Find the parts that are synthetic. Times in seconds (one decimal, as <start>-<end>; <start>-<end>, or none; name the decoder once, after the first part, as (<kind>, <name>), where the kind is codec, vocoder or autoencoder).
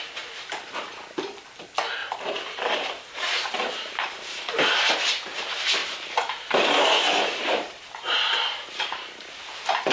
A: 2.0-4.9 (vocoder, BigVGAN v2); 5.8-9.4